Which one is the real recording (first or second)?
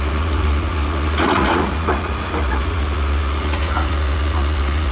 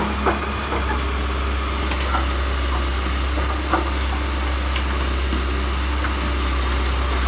second